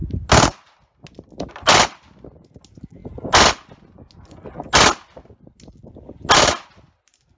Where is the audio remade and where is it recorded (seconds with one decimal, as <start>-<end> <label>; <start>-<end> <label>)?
0.0-7.4 recorded